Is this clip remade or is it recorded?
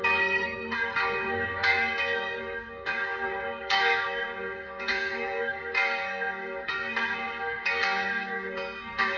remade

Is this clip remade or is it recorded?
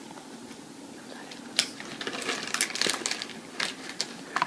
recorded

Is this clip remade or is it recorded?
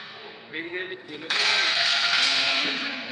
remade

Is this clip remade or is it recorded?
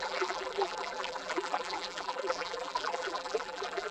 remade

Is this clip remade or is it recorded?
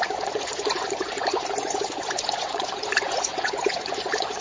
remade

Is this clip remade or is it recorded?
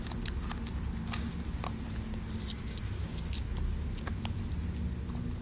recorded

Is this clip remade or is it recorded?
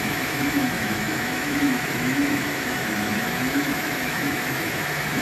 remade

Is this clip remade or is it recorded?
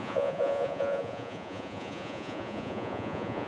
remade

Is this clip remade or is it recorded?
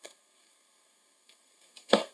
remade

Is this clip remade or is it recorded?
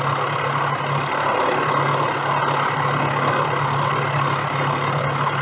recorded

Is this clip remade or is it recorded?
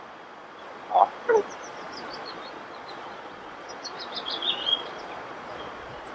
remade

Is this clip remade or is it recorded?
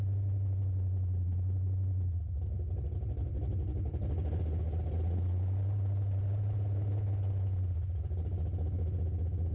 recorded